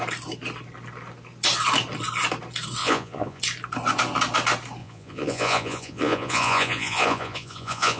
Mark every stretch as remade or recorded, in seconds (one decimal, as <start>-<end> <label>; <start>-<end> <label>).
0.0-2.8 recorded; 2.8-3.4 remade; 3.4-4.8 recorded; 4.8-8.0 remade